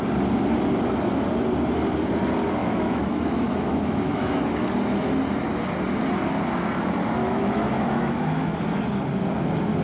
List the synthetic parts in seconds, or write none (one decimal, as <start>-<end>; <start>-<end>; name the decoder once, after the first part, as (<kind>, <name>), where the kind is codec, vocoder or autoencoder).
2.6-4.4 (autoencoder, DAC-VAE); 7.2-8.6